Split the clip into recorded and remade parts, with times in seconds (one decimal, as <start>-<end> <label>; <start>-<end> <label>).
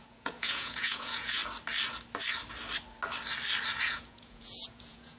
0.0-1.4 remade; 1.4-3.8 recorded; 3.8-5.2 remade